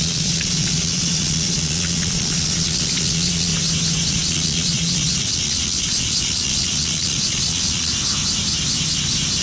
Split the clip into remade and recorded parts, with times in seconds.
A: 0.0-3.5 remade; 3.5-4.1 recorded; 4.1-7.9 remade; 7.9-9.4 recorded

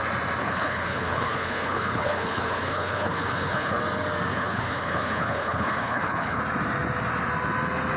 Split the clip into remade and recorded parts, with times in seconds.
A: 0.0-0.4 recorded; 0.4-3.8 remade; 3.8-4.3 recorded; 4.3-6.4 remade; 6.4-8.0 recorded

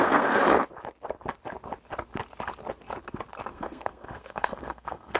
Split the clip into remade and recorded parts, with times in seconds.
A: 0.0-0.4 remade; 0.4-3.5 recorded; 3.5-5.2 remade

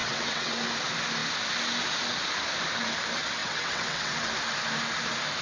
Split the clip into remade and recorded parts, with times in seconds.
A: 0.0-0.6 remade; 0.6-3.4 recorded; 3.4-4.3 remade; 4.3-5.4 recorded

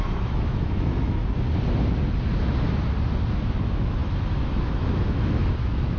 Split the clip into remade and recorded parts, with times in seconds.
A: 0.0-1.2 remade; 1.2-3.5 recorded; 3.5-6.0 remade

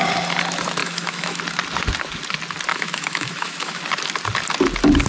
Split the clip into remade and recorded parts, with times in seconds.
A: 0.0-0.8 recorded; 0.8-1.4 remade; 1.4-2.7 recorded; 2.7-3.8 remade; 3.8-5.1 recorded